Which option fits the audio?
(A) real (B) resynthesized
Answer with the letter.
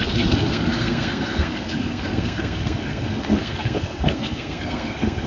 B